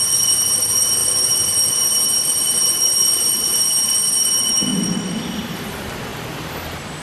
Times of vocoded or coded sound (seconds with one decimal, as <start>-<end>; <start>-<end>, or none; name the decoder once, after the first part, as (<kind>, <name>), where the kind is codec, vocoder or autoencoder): 0.0-4.7 (vocoder, BigVGAN v2); 5.4-7.0

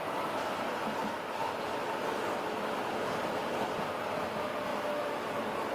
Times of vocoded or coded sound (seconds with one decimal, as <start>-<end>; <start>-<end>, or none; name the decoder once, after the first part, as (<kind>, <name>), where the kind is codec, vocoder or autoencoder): 0.0-3.4 (vocoder, BigVGAN v2); 3.9-4.7; 5.2-5.7

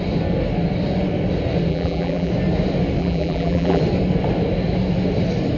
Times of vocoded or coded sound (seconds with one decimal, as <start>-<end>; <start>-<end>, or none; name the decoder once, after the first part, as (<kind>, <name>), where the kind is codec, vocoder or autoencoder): 1.7-2.3 (vocoder, BigVGAN v2); 3.0-3.8

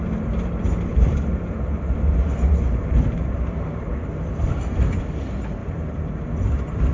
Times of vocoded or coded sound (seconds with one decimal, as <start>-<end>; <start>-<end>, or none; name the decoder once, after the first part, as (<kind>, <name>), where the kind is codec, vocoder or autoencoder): 0.9-5.0 (vocoder, BigVGAN v2); 5.6-6.9

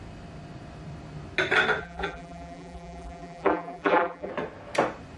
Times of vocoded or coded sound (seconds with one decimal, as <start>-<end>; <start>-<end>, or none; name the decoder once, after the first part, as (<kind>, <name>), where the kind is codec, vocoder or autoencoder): 1.8-4.3 (vocoder, BigVGAN v2)